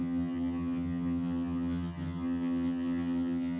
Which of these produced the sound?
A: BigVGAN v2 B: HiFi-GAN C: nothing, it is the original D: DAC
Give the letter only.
B